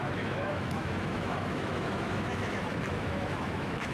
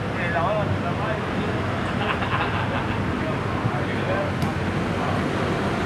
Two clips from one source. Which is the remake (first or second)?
first